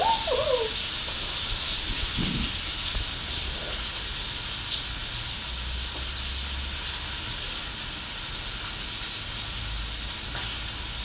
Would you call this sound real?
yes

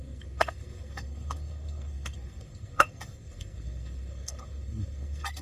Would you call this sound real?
no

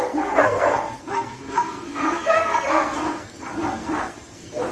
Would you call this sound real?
no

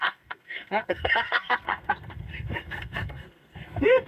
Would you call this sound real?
no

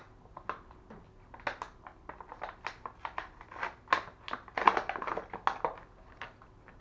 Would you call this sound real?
yes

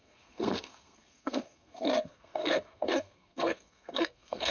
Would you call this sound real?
no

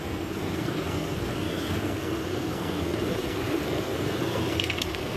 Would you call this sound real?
no